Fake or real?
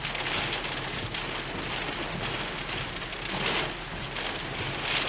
real